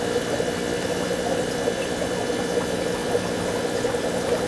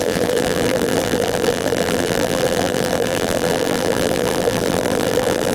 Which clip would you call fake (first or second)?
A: second